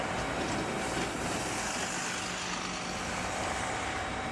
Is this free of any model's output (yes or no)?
yes